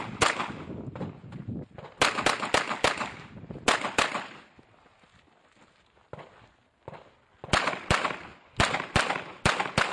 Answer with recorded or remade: recorded